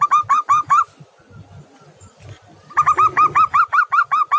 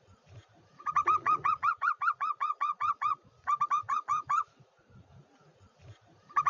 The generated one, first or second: second